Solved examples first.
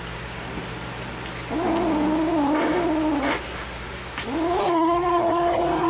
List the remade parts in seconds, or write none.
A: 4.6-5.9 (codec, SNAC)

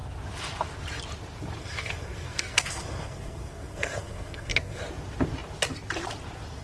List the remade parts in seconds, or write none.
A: 1.6-4.8 (codec, SNAC)

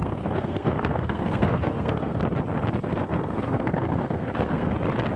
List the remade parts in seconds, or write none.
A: 0.0-2.2 (codec, SNAC); 2.9-4.7